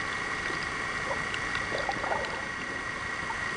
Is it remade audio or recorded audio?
recorded